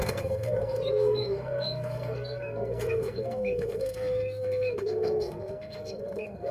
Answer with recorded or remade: remade